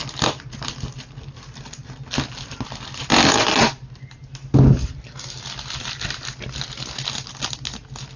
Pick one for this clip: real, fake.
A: real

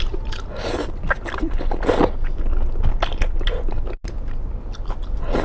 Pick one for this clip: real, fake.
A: real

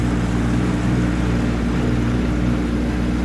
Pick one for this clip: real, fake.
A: real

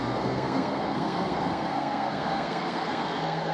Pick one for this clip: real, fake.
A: fake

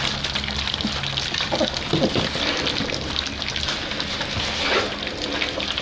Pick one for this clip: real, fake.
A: real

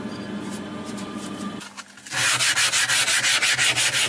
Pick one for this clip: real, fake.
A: real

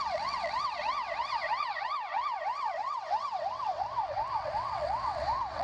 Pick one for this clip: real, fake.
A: fake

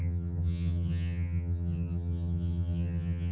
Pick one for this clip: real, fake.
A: fake